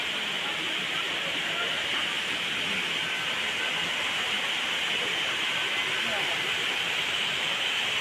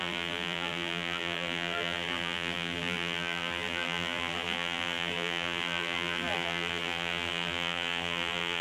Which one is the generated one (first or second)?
second